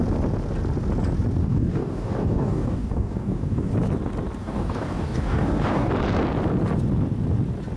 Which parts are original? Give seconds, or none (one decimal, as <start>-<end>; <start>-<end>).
0.0-1.4; 3.7-4.4; 5.9-7.8